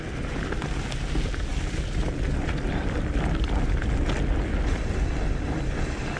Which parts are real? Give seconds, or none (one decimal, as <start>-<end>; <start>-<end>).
0.0-6.2